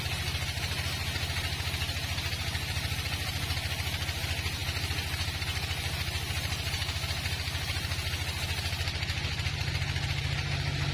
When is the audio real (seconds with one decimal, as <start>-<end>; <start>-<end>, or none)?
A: 0.0-10.9

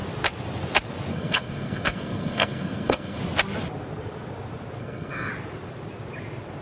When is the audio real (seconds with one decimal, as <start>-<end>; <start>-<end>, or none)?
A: 0.0-1.1; 3.2-4.8; 5.3-6.6